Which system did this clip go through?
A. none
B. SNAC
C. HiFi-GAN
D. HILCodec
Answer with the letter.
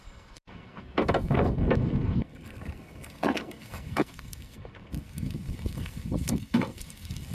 B